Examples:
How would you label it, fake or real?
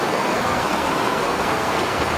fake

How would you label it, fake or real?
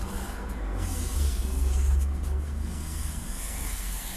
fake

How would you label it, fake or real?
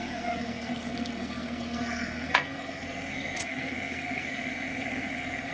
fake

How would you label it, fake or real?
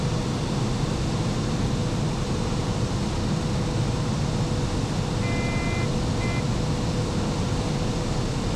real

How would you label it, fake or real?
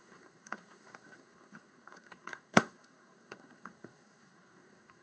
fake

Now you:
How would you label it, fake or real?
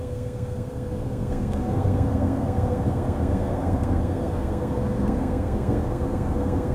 fake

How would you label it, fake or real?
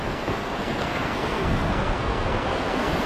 fake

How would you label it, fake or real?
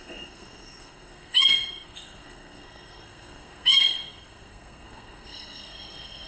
fake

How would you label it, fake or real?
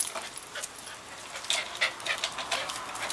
real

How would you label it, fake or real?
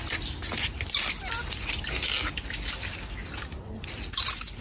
real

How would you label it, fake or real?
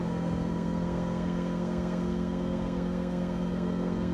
fake